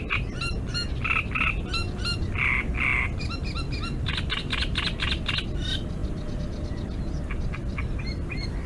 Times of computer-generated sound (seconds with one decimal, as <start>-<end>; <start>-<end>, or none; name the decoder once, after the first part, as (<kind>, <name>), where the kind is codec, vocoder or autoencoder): none